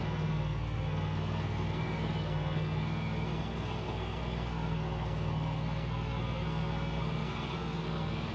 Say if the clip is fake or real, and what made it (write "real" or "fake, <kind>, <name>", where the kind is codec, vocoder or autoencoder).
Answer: fake, codec, SNAC